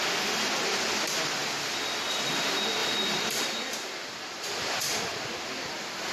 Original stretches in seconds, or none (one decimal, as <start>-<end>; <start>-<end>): 0.0-2.8